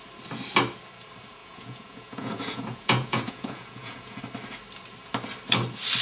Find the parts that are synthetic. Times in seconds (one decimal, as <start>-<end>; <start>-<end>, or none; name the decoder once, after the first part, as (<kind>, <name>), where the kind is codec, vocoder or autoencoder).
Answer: 1.4-4.2 (vocoder, Vocos)